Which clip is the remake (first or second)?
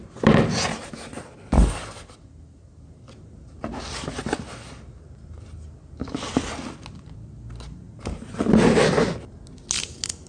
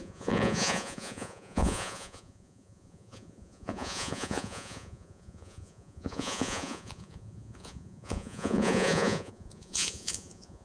second